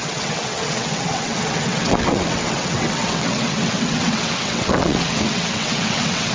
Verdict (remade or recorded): remade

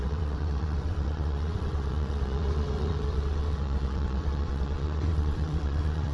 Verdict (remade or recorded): remade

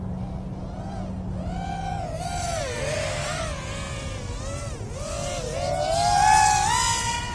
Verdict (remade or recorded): recorded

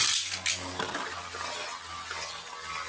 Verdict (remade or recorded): recorded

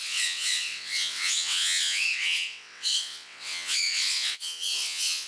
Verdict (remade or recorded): remade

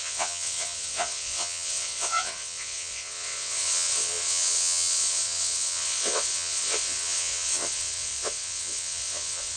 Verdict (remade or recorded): remade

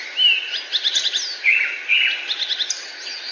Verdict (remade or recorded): recorded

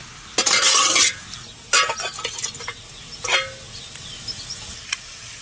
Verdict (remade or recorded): recorded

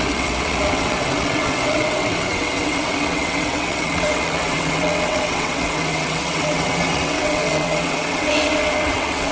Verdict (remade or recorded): remade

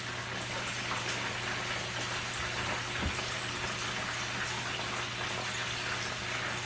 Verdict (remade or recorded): recorded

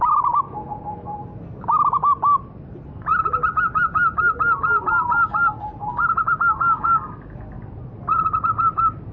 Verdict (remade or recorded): recorded